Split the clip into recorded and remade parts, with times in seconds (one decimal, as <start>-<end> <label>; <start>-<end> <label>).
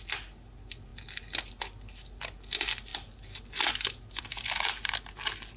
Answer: 0.0-5.6 recorded